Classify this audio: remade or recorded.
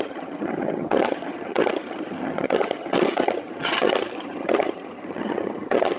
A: remade